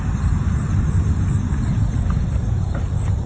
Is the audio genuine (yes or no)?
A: yes